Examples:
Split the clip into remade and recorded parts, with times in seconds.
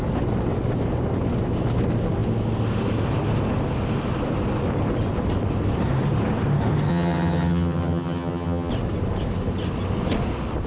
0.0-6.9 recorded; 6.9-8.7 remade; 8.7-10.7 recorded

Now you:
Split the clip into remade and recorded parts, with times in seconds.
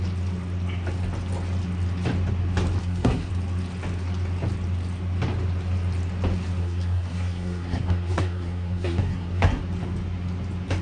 0.0-2.8 recorded; 2.8-3.3 remade; 3.3-6.6 recorded; 6.6-9.6 remade; 9.6-10.8 recorded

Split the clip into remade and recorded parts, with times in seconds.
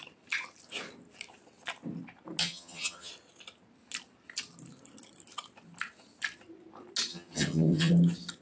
0.0-2.4 recorded; 2.4-3.1 remade; 3.1-7.1 recorded; 7.1-7.9 remade; 7.9-8.4 recorded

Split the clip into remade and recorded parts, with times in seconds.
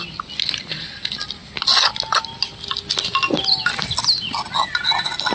0.0-5.3 recorded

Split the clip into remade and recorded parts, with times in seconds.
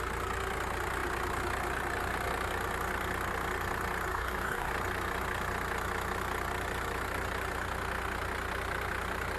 0.0-4.1 recorded; 4.1-4.7 remade; 4.7-9.4 recorded